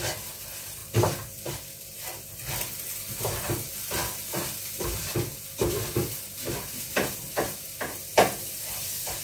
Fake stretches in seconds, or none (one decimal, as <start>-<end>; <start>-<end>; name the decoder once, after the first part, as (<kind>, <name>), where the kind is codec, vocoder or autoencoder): none